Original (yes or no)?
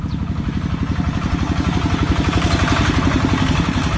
yes